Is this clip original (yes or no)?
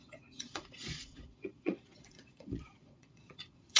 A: no